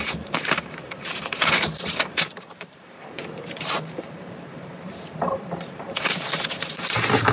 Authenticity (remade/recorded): remade